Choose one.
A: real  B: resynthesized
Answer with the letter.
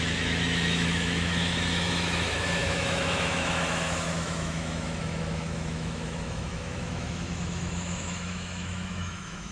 B